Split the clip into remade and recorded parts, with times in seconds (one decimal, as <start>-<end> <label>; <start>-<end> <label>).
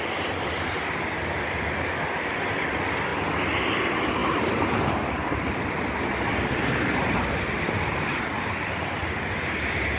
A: 0.0-10.0 recorded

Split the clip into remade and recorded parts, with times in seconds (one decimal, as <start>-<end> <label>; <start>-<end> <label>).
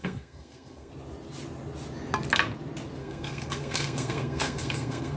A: 0.0-0.9 remade; 0.9-3.0 recorded; 3.0-5.2 remade